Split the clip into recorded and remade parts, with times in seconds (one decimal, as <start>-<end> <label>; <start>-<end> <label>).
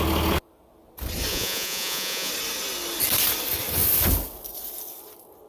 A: 0.0-1.3 recorded; 1.3-2.3 remade; 2.3-5.5 recorded